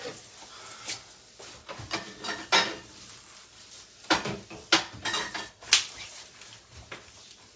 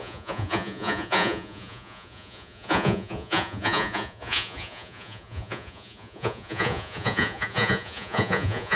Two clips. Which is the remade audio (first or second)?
second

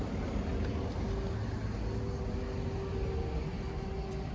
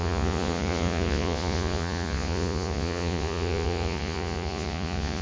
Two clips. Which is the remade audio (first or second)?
second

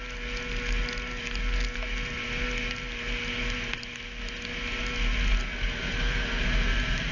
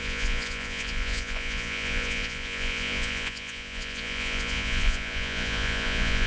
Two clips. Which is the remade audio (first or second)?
second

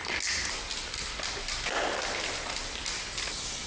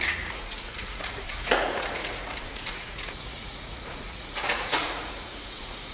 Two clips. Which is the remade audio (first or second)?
second